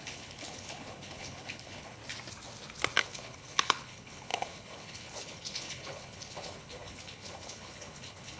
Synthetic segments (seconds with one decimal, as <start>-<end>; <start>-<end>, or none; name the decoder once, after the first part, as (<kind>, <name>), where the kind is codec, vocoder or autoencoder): 0.0-2.0 (codec, HILCodec); 3.0-8.4